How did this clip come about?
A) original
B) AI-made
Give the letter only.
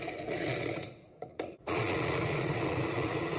B